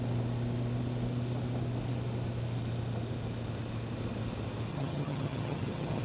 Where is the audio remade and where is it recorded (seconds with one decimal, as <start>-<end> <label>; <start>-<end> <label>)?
0.0-4.7 recorded; 4.7-6.0 remade